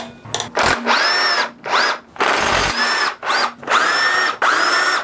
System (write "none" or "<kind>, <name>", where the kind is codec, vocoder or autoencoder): none